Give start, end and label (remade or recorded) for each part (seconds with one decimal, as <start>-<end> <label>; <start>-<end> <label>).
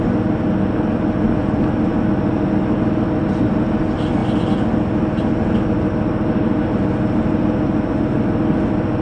0.0-9.0 recorded